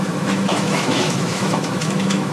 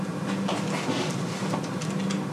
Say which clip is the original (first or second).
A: second